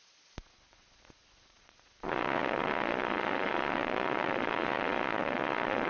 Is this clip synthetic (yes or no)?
yes